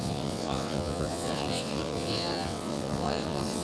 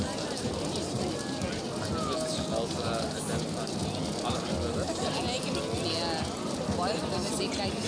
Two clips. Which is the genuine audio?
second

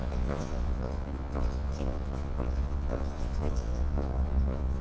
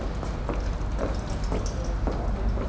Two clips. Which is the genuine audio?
second